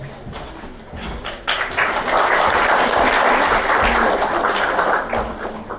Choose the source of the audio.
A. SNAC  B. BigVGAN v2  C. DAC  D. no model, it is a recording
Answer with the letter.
D